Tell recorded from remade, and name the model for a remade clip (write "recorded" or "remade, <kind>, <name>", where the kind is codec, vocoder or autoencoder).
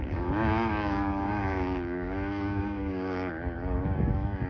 remade, codec, DAC